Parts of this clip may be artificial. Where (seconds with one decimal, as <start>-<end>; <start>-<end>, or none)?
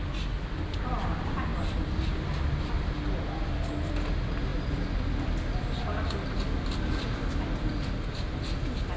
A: none